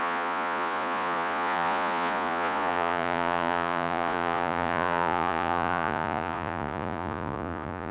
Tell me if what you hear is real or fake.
fake